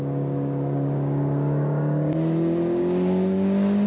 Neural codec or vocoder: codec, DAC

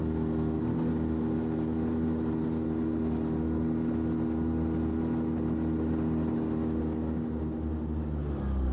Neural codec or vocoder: none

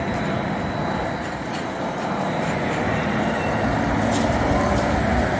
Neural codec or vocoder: none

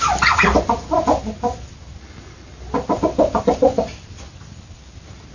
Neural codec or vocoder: none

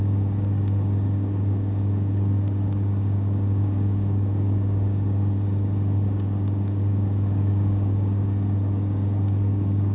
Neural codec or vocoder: codec, DAC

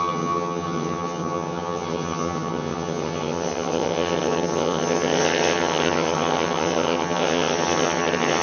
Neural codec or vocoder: vocoder, HiFi-GAN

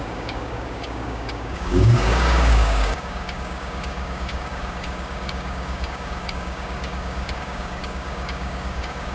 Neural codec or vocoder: codec, DAC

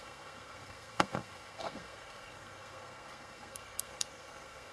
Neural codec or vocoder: codec, SNAC